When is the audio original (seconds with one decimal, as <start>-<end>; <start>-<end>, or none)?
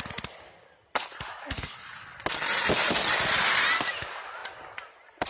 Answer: 0.0-5.3